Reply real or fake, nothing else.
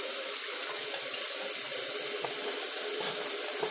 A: real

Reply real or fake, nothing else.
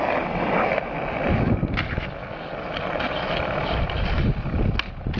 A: real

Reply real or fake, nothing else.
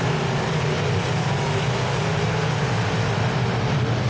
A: real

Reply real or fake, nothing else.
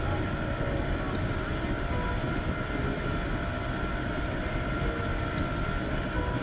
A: real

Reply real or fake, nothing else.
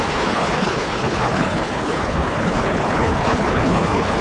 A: fake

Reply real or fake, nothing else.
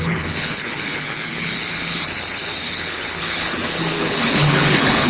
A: fake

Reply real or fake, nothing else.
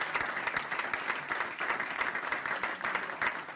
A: real